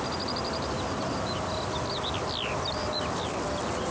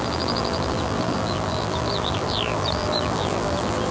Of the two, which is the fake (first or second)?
second